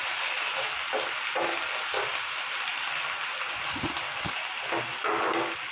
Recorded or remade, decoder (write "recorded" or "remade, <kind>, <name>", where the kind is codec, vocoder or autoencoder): recorded